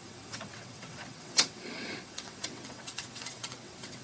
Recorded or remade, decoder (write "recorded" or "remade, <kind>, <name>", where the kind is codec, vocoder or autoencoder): remade, vocoder, WaveNeXt